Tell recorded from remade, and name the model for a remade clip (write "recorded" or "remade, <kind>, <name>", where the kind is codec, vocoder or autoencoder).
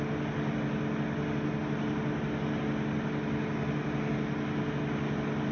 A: recorded